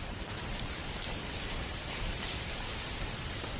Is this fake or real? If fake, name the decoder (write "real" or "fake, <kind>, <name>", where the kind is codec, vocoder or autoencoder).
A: fake, vocoder, BigVGAN v2